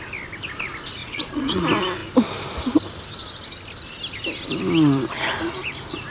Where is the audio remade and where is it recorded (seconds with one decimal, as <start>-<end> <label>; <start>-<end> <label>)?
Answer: 0.0-1.0 recorded; 1.0-1.6 remade; 1.6-6.1 recorded